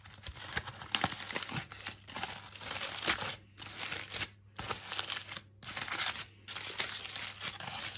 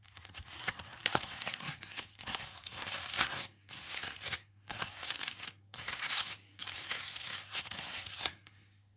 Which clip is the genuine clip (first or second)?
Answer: first